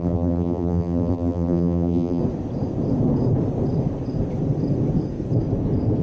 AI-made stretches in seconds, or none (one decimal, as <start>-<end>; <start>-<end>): 0.0-2.2